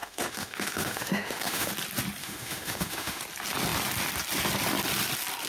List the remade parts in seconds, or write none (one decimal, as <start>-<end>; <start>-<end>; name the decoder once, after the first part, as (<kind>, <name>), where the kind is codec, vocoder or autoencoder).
0.0-1.7 (autoencoder, DAC-VAE); 2.2-3.2